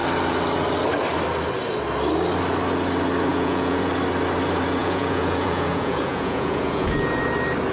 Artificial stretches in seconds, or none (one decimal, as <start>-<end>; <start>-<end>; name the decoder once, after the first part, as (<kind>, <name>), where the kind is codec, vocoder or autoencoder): 3.3-3.9 (vocoder, Vocos); 4.8-7.2